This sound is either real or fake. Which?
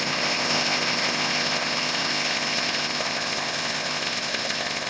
fake